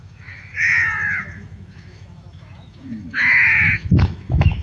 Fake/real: fake